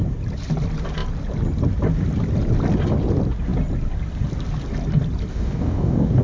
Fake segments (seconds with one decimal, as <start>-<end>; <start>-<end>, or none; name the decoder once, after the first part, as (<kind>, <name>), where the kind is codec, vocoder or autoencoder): 5.3-6.2 (codec, DAC)